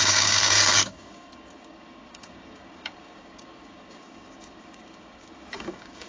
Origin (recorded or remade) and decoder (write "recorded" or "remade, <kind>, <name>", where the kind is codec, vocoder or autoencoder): remade, codec, DAC